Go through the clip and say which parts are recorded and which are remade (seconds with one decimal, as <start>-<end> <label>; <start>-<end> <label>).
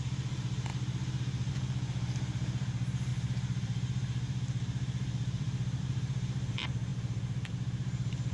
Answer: 0.0-8.3 remade